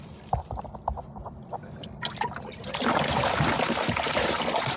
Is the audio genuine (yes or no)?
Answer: no